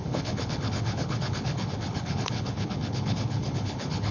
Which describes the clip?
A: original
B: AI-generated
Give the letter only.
B